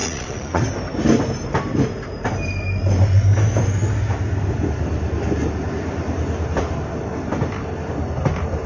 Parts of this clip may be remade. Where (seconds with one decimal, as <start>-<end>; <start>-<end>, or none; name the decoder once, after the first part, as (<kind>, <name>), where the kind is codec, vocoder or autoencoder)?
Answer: 0.0-0.6 (vocoder, Vocos)